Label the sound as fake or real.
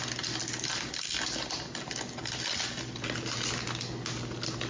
real